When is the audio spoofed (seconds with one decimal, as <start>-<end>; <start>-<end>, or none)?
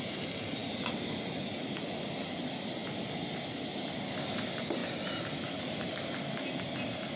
none